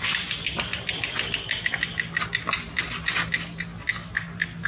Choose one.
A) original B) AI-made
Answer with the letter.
A